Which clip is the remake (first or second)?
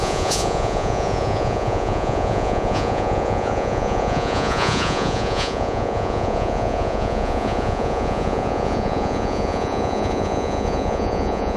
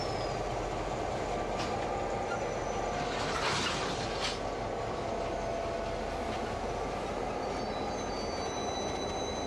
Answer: first